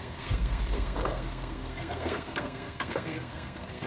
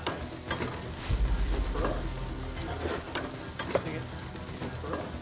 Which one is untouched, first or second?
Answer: second